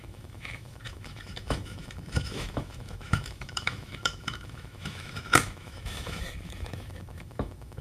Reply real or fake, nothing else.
fake